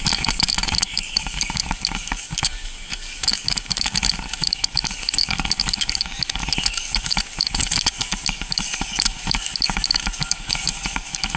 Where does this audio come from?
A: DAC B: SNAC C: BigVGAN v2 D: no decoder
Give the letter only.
A